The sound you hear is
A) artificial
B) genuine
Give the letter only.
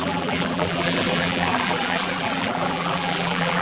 A